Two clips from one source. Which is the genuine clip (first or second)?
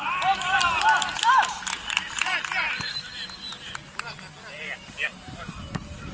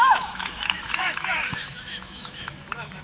first